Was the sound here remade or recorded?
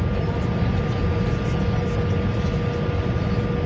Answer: recorded